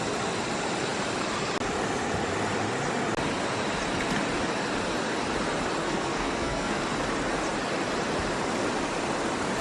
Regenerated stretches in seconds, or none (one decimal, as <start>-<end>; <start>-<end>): 5.8-6.8